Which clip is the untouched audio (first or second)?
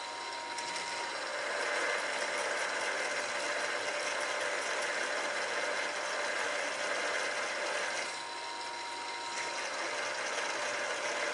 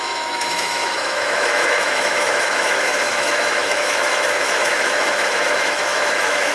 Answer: first